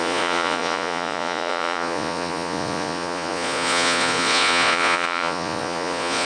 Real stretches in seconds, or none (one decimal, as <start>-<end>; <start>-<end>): none